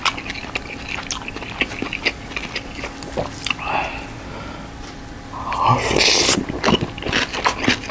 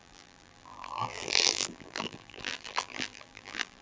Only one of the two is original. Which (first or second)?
first